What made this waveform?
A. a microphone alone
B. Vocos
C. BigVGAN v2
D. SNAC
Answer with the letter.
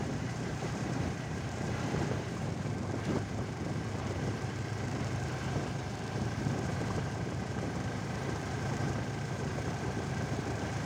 C